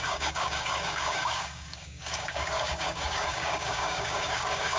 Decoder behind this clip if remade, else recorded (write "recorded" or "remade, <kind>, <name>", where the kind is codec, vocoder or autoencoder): remade, codec, DAC